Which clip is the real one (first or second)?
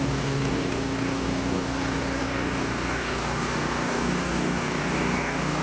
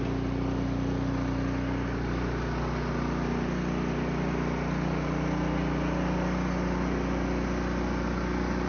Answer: second